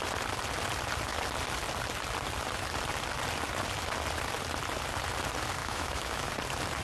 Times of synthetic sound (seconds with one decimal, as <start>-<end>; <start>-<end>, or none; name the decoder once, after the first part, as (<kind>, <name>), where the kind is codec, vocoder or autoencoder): 5.6-6.3 (autoencoder, DAC-VAE)